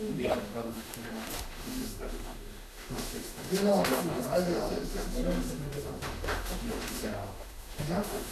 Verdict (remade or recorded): remade